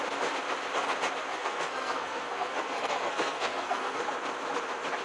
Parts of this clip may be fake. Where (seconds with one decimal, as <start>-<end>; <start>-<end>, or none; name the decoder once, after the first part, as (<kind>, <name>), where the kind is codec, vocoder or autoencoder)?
1.3-4.0 (codec, SNAC)